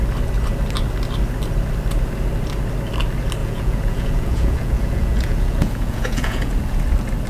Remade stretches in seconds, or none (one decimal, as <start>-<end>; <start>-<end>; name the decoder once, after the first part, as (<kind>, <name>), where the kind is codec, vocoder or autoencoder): 3.4-6.8 (vocoder, Vocos)